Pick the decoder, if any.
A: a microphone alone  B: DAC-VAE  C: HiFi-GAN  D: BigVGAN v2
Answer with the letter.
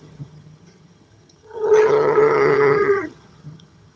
C